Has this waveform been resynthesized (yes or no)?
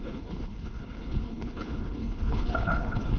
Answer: yes